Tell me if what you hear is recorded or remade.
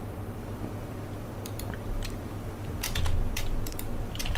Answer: remade